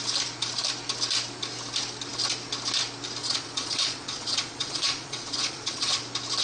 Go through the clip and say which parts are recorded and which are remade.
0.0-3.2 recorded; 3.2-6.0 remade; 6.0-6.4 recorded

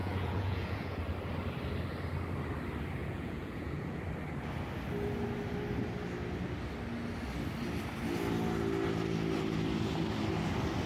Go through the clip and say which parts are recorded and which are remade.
0.0-1.0 remade; 1.0-3.0 recorded; 3.0-4.0 remade; 4.0-10.9 recorded

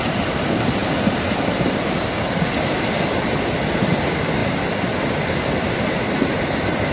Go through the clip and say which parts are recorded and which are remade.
0.0-6.9 recorded

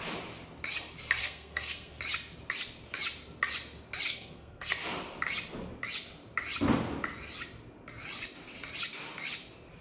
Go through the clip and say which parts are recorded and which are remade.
0.0-1.2 recorded; 1.2-2.0 remade; 2.0-4.1 recorded; 4.1-4.7 remade; 4.7-9.8 recorded

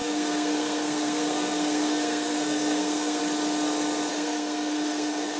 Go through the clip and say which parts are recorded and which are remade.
0.0-3.2 remade; 3.2-4.1 recorded; 4.1-5.4 remade

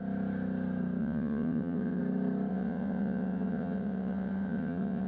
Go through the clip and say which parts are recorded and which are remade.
0.0-1.0 recorded; 1.0-2.0 remade; 2.0-2.5 recorded; 2.5-5.1 remade

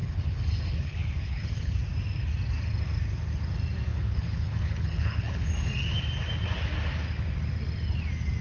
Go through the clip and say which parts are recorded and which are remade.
0.0-1.7 remade; 1.7-3.9 recorded; 3.9-5.5 remade; 5.5-8.4 recorded

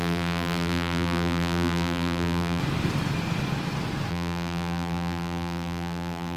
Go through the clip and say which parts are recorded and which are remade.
0.0-2.6 remade; 2.6-4.1 recorded; 4.1-6.4 remade